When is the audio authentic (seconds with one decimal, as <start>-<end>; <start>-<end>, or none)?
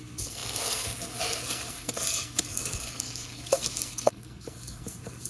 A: none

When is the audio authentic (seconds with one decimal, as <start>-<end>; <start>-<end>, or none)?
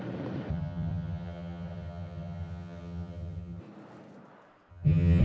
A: 0.0-0.5; 3.6-4.7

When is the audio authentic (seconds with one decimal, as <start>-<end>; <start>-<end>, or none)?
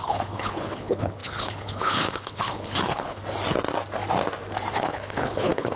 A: 3.2-4.7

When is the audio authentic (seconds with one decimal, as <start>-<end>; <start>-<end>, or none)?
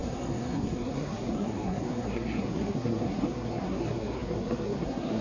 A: none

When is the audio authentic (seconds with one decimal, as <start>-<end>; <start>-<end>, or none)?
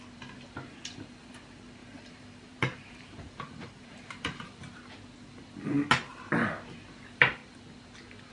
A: 0.0-1.8; 4.6-8.3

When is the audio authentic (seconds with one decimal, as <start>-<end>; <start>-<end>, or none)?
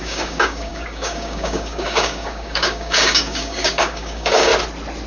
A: 4.5-5.1